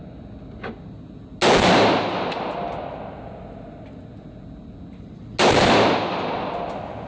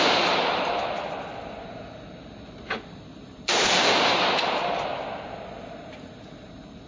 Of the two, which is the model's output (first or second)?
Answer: second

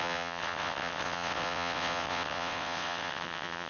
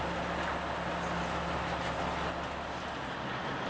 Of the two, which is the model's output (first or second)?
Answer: first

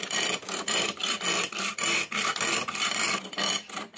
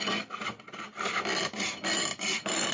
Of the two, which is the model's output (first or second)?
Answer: first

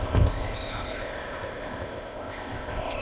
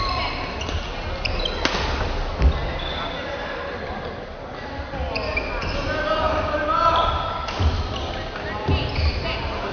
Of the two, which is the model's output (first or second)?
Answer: first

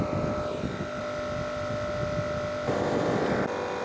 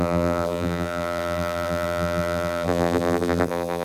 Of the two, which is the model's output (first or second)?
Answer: second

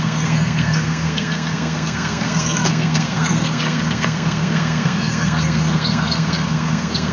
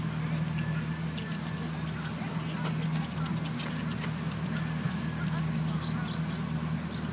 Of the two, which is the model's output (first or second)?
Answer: first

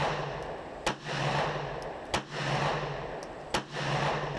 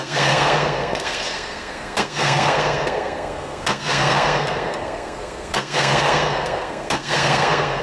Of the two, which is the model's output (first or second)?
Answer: second